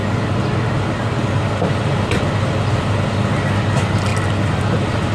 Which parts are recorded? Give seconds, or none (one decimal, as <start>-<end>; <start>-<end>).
0.0-2.8